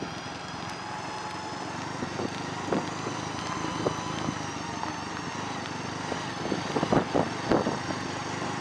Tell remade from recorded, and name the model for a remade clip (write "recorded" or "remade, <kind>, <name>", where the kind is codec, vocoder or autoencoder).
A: recorded